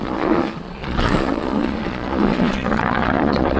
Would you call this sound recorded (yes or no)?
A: no